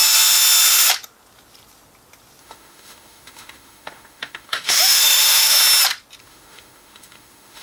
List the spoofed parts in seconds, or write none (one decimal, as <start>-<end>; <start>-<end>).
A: 2.4-5.6; 6.2-7.6